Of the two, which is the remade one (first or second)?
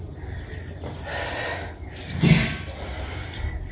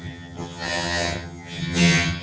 second